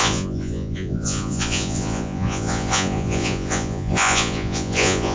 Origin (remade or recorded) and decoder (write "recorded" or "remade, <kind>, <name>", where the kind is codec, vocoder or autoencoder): remade, vocoder, Vocos